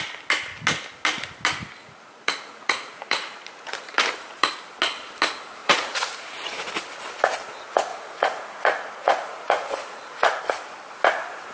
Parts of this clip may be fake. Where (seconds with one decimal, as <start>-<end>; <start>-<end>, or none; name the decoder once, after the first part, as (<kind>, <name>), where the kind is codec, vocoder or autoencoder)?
1.8-4.0 (vocoder, Vocos); 5.6-6.7; 7.9-10.4